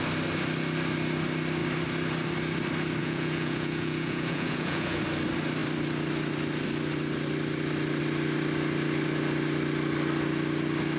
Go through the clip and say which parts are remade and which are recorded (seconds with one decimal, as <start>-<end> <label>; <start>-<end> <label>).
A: 0.0-3.0 recorded; 3.0-5.0 remade; 5.0-11.0 recorded